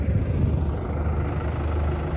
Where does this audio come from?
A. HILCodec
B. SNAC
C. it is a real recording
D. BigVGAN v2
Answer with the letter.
C